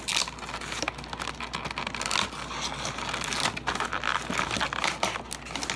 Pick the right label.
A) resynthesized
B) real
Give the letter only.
B